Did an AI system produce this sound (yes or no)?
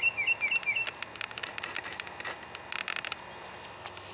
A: no